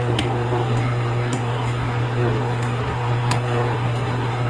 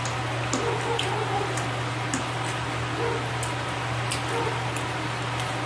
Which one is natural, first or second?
second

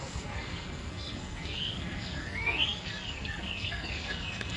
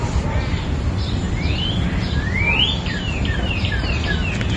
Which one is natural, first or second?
second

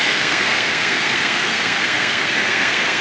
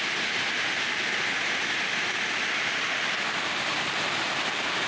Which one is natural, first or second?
second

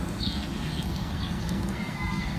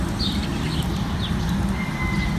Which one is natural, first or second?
second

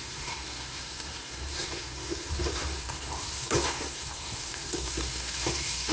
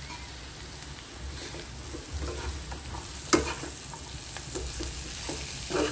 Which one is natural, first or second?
second